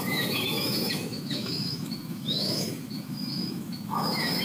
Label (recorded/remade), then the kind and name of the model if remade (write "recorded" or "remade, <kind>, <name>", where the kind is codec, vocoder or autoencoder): remade, autoencoder, DAC-VAE